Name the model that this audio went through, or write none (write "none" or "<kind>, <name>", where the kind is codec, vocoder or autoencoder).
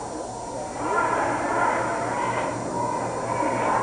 none